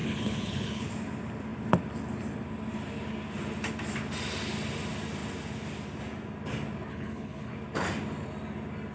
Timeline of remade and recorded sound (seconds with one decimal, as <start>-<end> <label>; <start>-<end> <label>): 0.0-0.9 remade; 0.9-6.9 recorded; 6.9-7.5 remade; 7.5-8.9 recorded